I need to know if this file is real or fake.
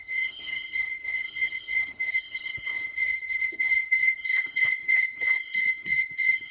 fake